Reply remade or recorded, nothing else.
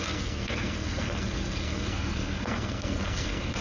remade